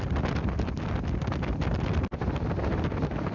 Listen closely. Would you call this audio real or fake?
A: real